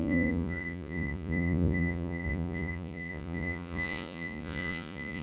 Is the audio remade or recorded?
remade